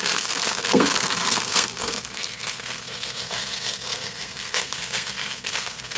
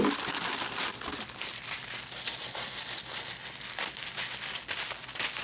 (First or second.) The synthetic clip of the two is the first